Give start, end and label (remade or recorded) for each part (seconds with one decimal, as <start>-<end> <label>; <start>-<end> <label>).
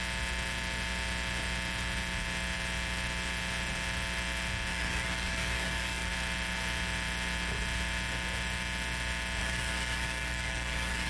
0.0-4.7 recorded; 4.7-6.1 remade; 6.1-9.4 recorded; 9.4-11.1 remade